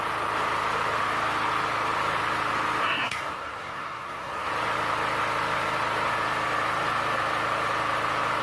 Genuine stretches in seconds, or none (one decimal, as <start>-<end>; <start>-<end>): 0.0-2.8; 4.5-8.4